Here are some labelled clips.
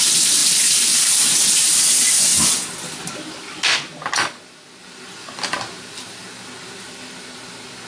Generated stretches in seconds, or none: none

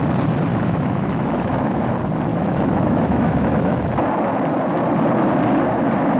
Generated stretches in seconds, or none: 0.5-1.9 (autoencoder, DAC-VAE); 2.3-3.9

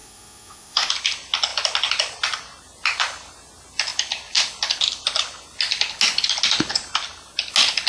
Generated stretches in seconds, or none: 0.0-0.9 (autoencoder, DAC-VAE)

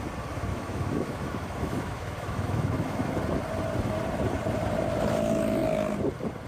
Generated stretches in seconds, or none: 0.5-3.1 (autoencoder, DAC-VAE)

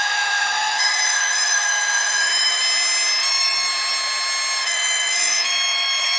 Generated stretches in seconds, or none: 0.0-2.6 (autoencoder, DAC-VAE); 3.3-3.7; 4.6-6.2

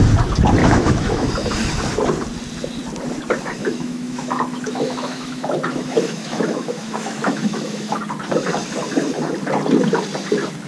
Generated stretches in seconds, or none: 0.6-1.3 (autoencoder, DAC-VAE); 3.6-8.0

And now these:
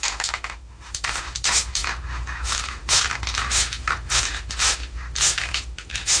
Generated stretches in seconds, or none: 0.0-6.2 (autoencoder, DAC-VAE)

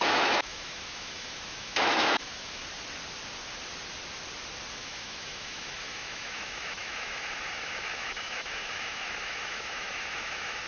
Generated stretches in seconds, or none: 0.0-2.6 (autoencoder, DAC-VAE); 4.8-10.7